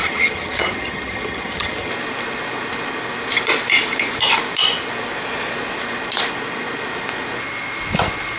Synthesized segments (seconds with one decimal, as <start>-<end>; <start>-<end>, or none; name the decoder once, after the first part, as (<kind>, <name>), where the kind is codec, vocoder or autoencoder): 0.0-1.9 (vocoder, HiFi-GAN)

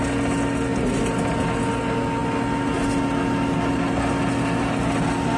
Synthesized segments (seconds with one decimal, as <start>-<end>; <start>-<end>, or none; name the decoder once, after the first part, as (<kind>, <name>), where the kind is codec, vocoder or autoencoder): none

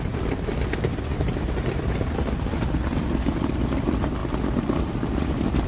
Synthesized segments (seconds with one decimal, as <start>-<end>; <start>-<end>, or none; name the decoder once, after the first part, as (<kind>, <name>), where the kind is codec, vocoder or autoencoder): none

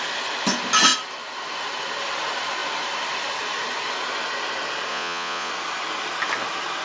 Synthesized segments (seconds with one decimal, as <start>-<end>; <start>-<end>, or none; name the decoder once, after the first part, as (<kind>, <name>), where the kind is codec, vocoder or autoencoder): 4.9-5.5 (vocoder, Vocos)

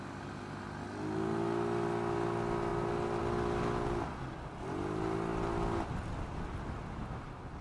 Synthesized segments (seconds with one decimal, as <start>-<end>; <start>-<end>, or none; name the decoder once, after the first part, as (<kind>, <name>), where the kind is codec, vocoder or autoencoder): none